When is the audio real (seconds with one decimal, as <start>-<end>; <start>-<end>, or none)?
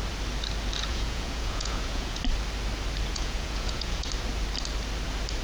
0.0-0.9; 2.2-3.1; 4.1-5.4